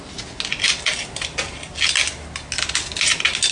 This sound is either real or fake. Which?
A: real